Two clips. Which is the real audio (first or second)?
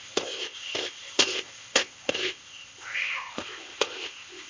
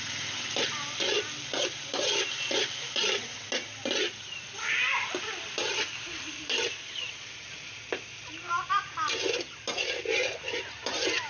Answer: second